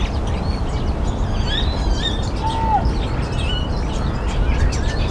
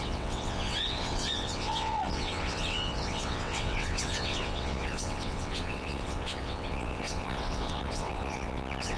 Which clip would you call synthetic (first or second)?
second